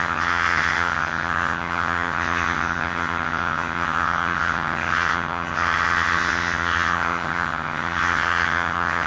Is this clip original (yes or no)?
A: no